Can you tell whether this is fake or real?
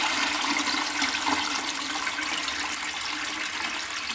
real